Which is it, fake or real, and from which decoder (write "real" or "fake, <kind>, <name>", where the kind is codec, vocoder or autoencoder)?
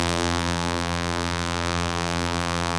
fake, vocoder, BigVGAN v2